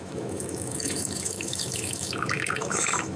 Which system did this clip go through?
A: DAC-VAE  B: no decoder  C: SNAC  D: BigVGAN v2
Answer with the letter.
A